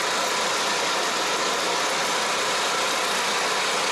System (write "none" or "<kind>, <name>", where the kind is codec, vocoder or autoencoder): none